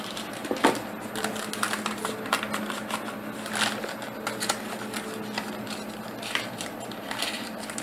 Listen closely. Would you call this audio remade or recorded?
recorded